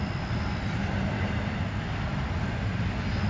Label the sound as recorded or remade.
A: recorded